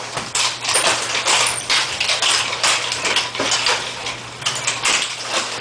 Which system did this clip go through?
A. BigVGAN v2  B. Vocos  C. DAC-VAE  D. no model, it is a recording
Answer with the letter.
A